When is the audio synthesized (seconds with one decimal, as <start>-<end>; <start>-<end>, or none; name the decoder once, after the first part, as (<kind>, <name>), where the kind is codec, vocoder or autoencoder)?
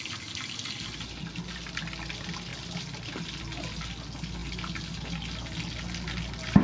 none